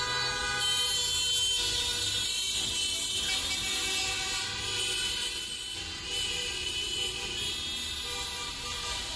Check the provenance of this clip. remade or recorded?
recorded